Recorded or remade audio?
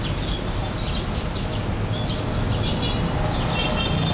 recorded